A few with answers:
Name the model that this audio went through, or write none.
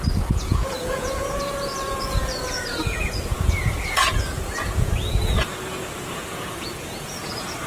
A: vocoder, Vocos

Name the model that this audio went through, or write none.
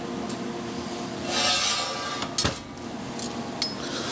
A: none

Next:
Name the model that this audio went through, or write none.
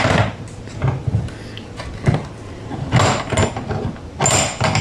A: none